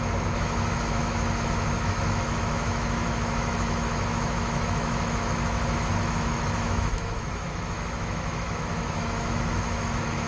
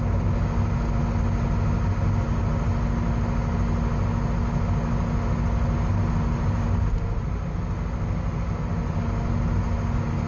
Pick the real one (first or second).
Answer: second